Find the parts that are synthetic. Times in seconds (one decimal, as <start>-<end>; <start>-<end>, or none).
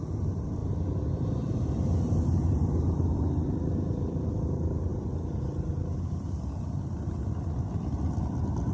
0.6-4.3; 4.9-5.7